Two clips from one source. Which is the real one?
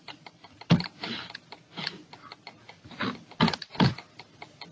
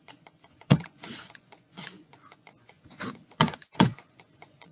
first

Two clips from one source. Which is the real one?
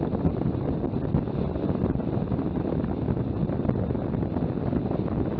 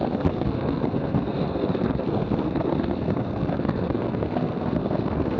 first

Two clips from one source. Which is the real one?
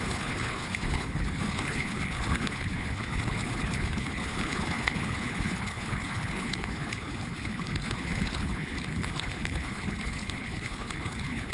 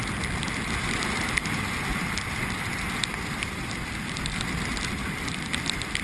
second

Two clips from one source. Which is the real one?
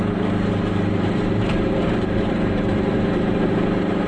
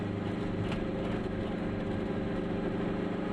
second